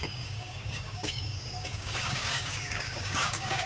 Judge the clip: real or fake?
fake